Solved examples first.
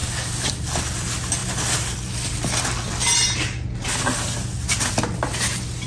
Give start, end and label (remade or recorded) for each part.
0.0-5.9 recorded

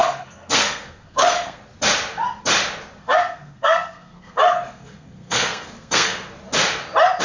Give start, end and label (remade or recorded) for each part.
0.0-1.6 remade; 1.6-3.0 recorded; 3.0-6.3 remade; 6.3-7.2 recorded

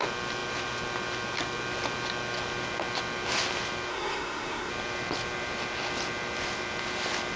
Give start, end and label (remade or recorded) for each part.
0.0-3.9 recorded; 3.9-4.7 remade; 4.7-7.4 recorded

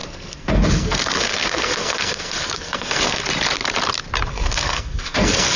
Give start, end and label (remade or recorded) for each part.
0.0-3.2 remade; 3.2-4.3 recorded; 4.3-5.6 remade